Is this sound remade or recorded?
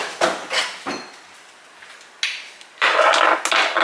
recorded